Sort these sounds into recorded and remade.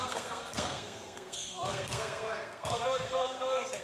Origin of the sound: remade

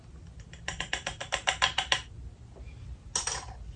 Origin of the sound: recorded